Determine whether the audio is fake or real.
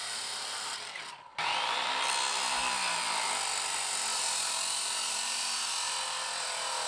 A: fake